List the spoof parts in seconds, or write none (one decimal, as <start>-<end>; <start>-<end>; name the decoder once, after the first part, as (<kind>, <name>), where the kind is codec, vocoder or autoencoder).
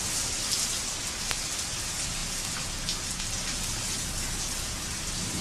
none